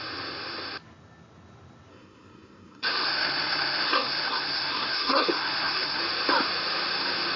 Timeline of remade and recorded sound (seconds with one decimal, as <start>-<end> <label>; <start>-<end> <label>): 0.0-1.9 recorded; 1.9-6.0 remade; 6.0-7.4 recorded